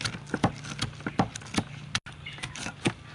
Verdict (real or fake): real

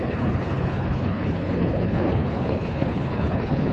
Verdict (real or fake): fake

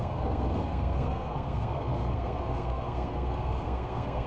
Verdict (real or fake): fake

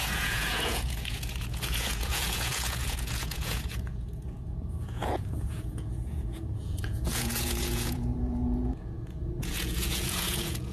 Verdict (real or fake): fake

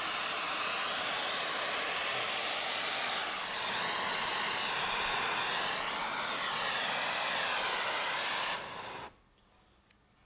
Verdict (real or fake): real